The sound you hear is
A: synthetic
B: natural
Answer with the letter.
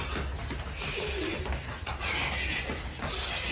B